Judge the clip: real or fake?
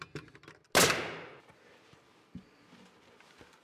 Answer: real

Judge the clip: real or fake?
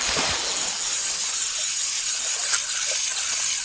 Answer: real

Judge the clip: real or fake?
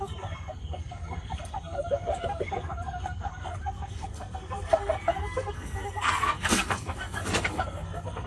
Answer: fake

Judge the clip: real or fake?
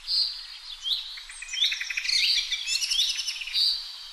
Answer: real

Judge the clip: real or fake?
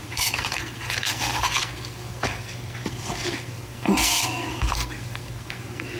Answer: fake